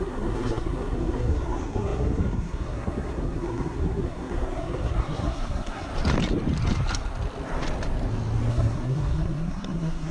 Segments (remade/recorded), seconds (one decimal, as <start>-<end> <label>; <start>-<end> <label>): 0.0-5.9 remade; 5.9-8.5 recorded; 8.5-10.1 remade